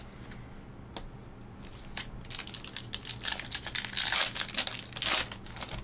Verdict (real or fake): real